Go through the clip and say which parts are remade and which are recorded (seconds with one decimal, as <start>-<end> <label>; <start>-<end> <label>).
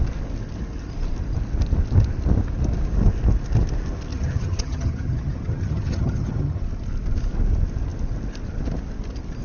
0.0-4.1 recorded; 4.1-6.6 remade; 6.6-9.4 recorded